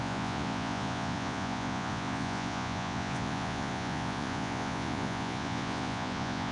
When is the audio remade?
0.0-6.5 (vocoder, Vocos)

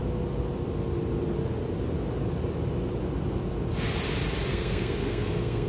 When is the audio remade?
4.5-5.7 (codec, SNAC)

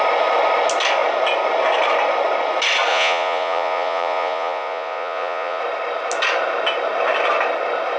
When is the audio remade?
2.9-5.6 (vocoder, Vocos)

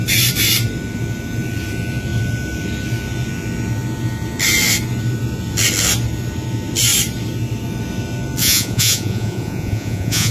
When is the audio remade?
8.4-10.3 (vocoder, Vocos)

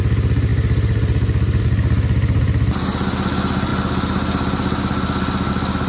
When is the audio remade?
none

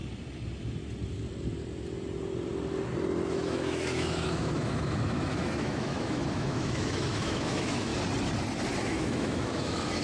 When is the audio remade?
3.3-7.9 (autoencoder, DAC-VAE); 8.8-10.0